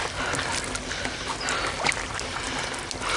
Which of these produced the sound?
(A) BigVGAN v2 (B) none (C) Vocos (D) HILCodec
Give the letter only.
B